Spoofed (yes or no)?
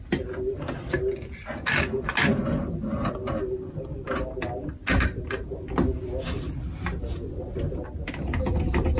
no